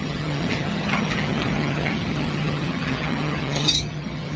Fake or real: fake